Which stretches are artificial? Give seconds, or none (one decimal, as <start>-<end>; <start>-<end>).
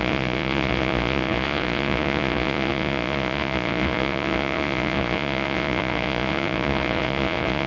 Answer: 0.0-7.7